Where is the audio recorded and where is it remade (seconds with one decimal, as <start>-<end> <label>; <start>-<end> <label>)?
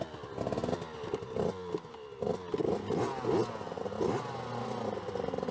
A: 0.0-5.5 recorded